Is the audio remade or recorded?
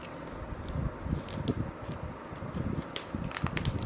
recorded